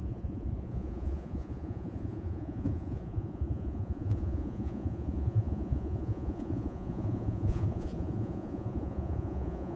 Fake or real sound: fake